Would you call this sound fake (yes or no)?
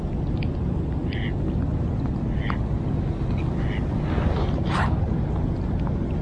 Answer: no